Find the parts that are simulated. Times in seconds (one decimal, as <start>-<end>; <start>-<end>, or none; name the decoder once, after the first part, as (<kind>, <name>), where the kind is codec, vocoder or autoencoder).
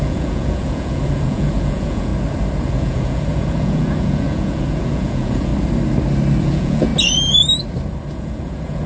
0.0-2.1 (vocoder, Vocos); 2.7-5.5; 6.4-6.9; 8.1-8.9